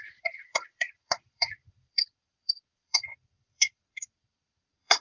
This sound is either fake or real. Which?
fake